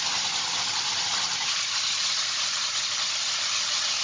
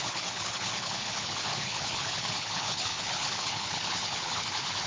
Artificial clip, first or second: second